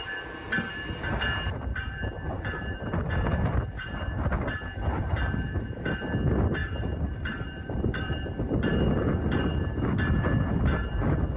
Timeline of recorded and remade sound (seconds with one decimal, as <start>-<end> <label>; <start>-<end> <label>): 0.0-1.7 recorded; 1.7-3.1 remade; 3.1-6.6 recorded; 6.6-9.6 remade; 9.6-11.4 recorded